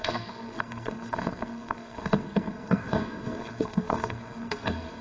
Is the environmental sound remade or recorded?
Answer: remade